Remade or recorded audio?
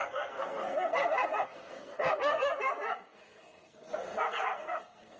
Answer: remade